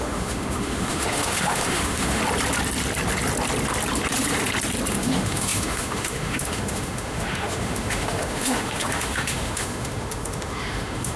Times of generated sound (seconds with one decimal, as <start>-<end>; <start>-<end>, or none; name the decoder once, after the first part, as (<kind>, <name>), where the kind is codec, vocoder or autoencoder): 0.0-2.2 (autoencoder, DAC-VAE); 4.9-11.2